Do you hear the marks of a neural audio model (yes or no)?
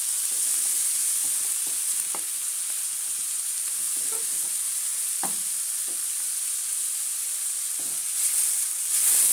no